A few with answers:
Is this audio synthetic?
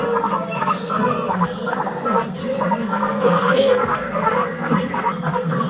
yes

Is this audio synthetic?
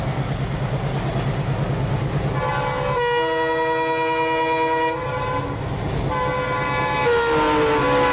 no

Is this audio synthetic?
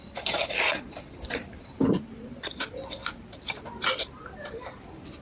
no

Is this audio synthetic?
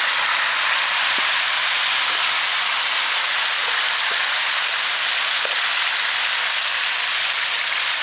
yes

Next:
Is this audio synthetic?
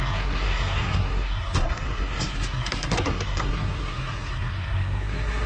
yes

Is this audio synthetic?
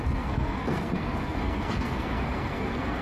yes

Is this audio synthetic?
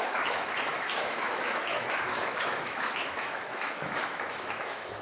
yes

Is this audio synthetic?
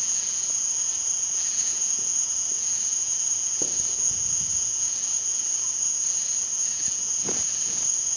yes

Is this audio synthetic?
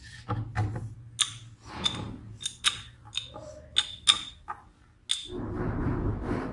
no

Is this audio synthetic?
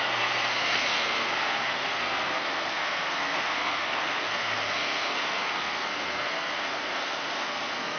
yes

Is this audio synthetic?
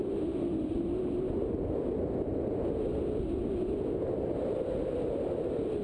no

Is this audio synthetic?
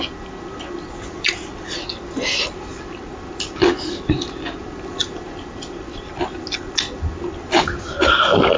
no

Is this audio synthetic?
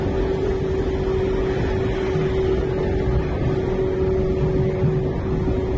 no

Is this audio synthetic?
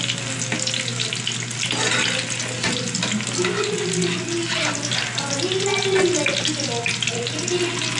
no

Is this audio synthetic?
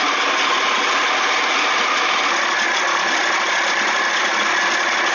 no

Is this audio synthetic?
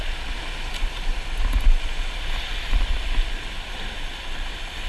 no